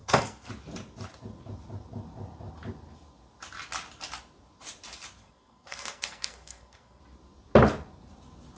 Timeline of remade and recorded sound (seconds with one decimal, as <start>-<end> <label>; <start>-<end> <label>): 0.0-0.5 remade; 0.5-5.2 recorded; 5.2-7.0 remade; 7.0-8.6 recorded